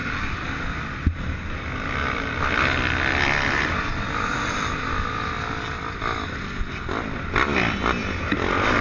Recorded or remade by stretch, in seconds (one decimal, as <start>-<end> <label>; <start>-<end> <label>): 0.0-8.8 recorded